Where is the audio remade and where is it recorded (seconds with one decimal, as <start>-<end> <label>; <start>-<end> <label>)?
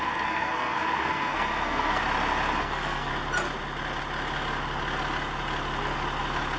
0.0-2.0 remade; 2.0-2.6 recorded; 2.6-3.1 remade; 3.1-6.6 recorded